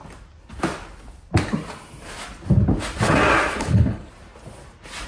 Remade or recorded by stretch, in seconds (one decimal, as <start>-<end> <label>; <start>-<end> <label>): 0.0-3.5 recorded; 3.5-4.1 remade; 4.1-5.1 recorded

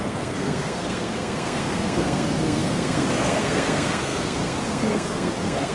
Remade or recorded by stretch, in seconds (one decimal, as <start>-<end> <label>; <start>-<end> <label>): 0.0-5.7 remade

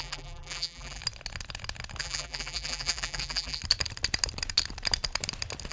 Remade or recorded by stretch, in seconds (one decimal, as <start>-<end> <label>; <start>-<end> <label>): 0.0-1.0 remade; 1.0-2.0 recorded; 2.0-3.6 remade; 3.6-5.7 recorded